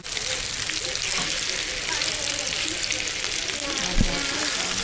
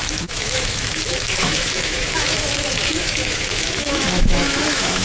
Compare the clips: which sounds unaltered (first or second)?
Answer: first